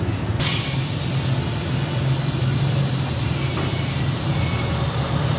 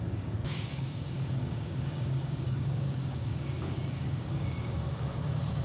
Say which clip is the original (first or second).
first